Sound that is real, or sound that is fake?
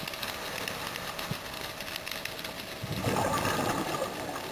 real